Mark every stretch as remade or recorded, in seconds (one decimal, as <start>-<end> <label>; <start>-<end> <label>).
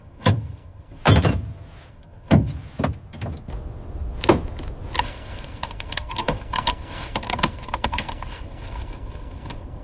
0.0-1.0 remade; 1.0-1.9 recorded; 1.9-2.5 remade; 2.5-5.0 recorded; 5.0-9.8 remade